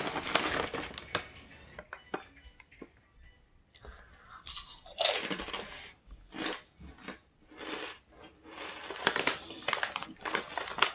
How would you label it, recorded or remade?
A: recorded